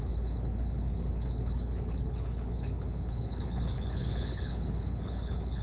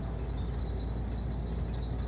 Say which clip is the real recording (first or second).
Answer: second